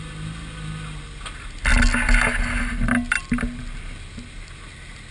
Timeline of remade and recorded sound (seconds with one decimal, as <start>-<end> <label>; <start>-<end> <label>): 0.0-5.1 recorded